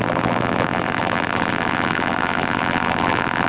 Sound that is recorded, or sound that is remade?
remade